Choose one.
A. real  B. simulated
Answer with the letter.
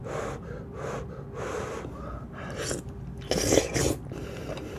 A